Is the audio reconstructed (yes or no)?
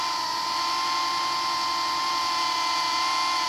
no